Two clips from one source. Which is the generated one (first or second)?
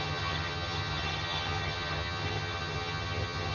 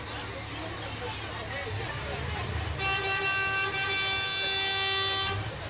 first